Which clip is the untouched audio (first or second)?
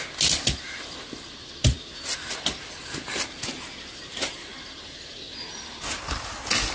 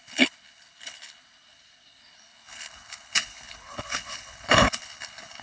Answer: first